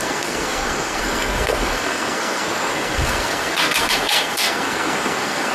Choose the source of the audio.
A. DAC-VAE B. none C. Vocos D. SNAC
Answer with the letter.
D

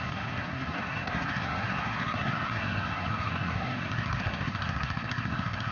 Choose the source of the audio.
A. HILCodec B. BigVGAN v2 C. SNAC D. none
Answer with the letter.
C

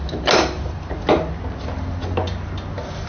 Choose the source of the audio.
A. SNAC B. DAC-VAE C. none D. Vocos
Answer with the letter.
C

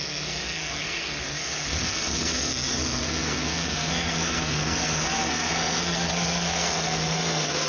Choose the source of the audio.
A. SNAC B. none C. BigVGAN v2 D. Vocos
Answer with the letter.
A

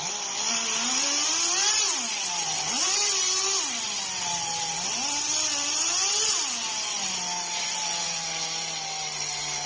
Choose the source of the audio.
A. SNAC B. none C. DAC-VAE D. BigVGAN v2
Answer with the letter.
B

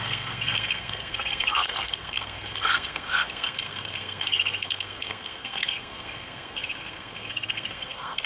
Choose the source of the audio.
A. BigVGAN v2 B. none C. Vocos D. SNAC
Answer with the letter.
D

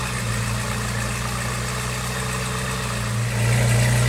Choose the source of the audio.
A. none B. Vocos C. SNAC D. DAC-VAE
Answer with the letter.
A